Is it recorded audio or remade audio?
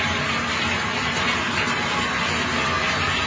recorded